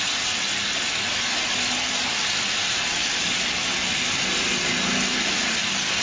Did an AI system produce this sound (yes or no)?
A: no